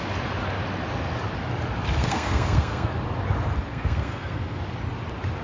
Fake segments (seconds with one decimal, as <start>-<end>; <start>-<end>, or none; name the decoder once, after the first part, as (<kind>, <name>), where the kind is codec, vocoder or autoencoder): 2.0-2.9 (codec, SNAC); 3.7-4.6